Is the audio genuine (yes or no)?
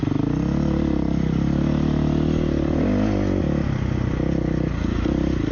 yes